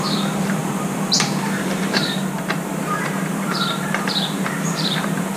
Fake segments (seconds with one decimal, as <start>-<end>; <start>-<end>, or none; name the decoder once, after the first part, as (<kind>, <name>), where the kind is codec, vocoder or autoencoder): 0.0-5.4 (vocoder, BigVGAN v2)